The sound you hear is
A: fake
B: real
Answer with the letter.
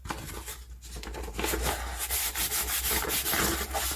B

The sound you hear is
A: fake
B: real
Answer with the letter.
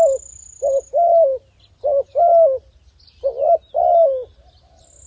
B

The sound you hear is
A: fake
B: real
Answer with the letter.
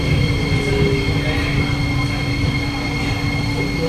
B